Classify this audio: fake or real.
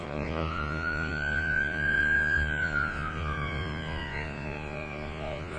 fake